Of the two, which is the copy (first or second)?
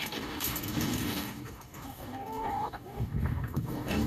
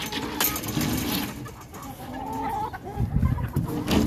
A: first